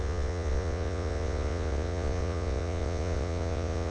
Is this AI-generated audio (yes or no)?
yes